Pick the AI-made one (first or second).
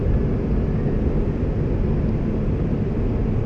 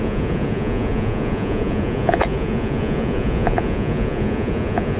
second